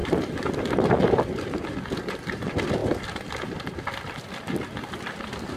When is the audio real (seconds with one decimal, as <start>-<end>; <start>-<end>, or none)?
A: 0.0-5.6